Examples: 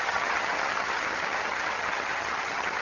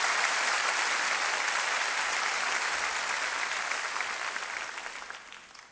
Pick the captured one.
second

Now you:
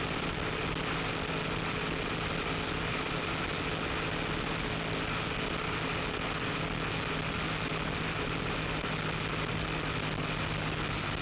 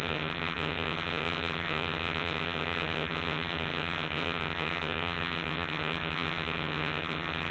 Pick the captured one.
first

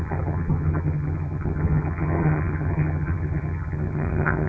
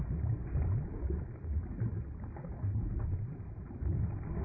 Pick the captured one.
second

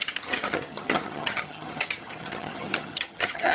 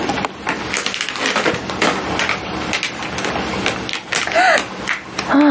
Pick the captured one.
second